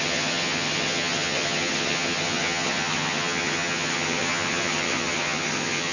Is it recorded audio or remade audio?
remade